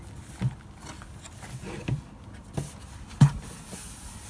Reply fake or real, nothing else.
real